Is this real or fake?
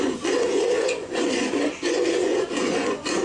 fake